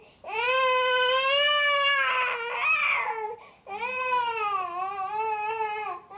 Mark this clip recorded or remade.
recorded